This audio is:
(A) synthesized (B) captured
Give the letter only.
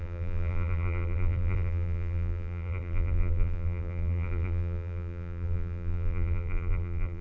A